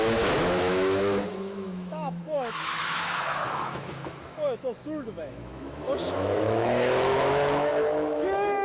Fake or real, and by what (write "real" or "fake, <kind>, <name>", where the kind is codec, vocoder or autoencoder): fake, autoencoder, DAC-VAE